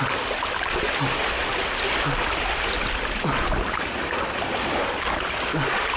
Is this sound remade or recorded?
recorded